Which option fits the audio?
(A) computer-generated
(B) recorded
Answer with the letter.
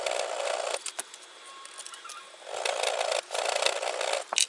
B